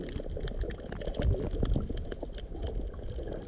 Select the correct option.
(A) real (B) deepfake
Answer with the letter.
A